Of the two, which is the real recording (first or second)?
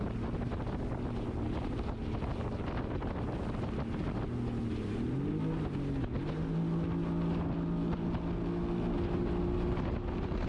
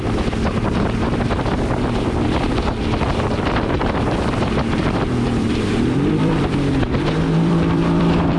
first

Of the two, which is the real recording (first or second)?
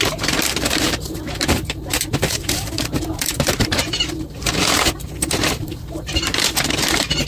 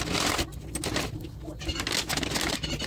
second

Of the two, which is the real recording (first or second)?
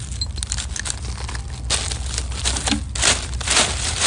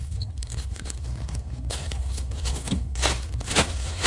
first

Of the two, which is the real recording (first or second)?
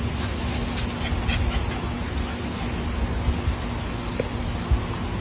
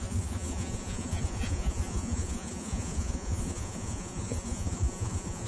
first